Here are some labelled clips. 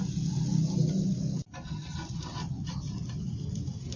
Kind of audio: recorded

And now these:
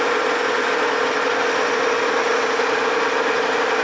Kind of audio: recorded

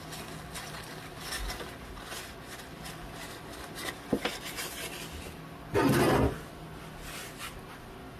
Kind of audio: recorded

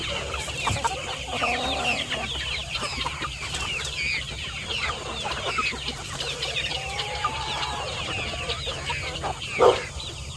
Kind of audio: remade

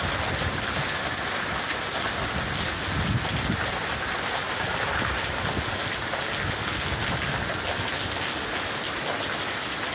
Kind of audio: recorded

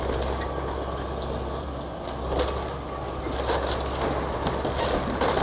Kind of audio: recorded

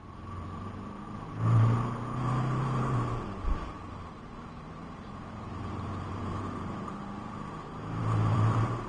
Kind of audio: remade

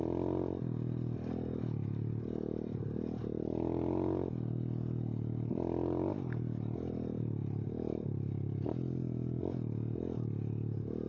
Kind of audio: recorded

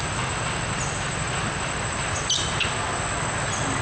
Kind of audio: recorded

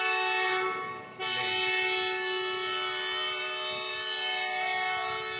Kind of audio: recorded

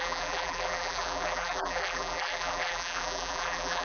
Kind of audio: remade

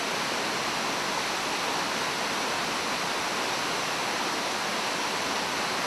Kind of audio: recorded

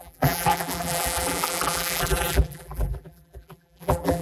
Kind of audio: remade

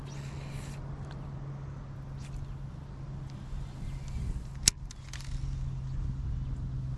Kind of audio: recorded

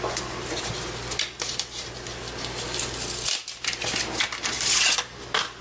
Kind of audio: recorded